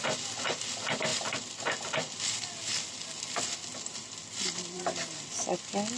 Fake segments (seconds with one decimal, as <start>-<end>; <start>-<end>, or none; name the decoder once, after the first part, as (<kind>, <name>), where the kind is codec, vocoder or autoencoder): none